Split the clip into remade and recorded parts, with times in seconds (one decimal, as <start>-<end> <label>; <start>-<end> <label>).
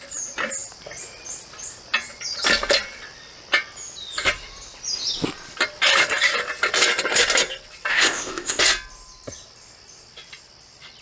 0.0-7.9 recorded; 7.9-8.6 remade; 8.6-11.0 recorded